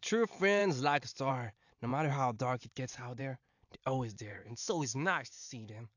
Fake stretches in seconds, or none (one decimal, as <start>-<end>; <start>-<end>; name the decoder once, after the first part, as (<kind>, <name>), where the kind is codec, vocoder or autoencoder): 4.3-5.5 (autoencoder, DAC-VAE)